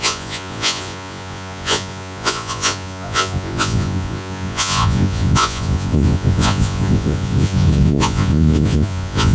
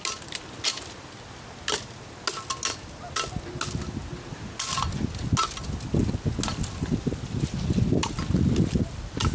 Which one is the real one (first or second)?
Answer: second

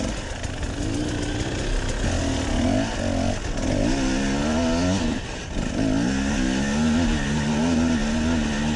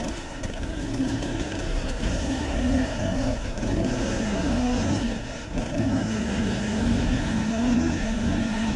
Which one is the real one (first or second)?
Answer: first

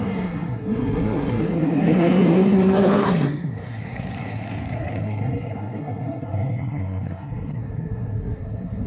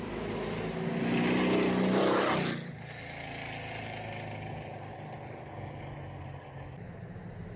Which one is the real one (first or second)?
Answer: second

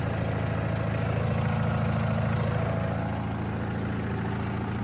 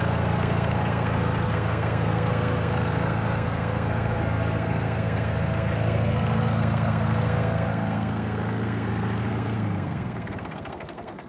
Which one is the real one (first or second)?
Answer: first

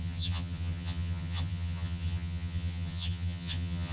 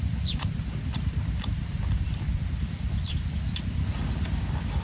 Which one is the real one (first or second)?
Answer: second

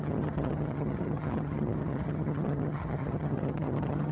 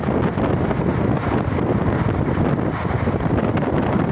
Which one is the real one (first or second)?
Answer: second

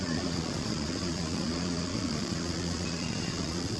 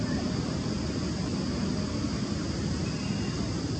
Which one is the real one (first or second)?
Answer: second